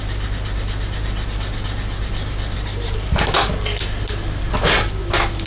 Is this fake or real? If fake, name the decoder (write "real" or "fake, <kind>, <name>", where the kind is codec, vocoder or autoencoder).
real